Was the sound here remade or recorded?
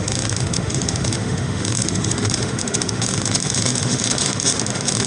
remade